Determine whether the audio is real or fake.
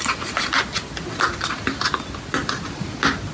real